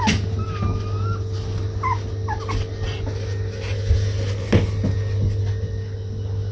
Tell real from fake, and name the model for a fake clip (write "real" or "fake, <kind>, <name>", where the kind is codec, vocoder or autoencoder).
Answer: real